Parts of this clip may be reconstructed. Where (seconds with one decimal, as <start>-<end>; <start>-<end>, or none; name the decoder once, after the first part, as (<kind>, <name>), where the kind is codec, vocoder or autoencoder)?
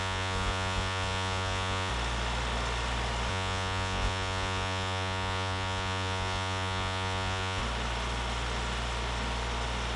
0.0-1.9 (vocoder, Vocos); 3.3-7.6